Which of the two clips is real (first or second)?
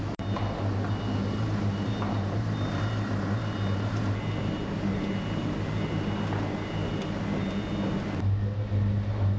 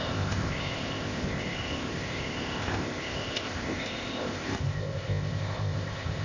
first